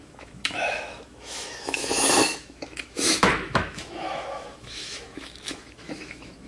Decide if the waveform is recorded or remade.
remade